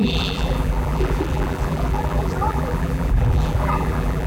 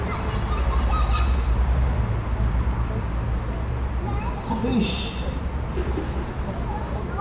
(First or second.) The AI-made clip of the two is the first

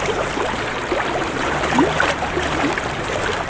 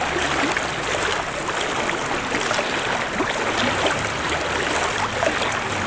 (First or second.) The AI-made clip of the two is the first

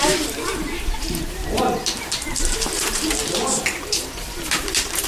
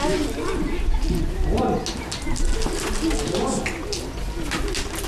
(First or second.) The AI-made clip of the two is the first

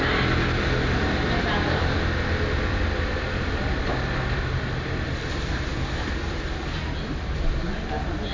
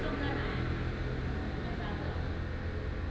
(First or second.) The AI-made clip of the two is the first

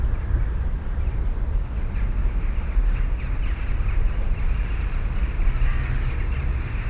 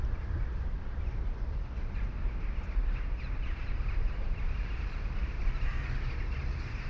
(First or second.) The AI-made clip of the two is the second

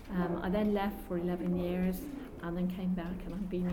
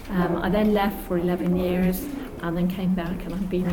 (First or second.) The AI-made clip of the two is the second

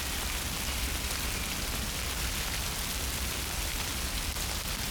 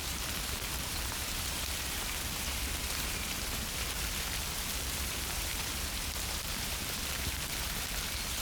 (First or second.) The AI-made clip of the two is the second